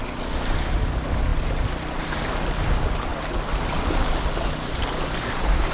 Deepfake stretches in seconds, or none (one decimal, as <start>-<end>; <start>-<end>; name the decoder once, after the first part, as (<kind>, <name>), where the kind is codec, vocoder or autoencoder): none